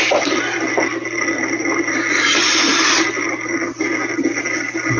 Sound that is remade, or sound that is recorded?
recorded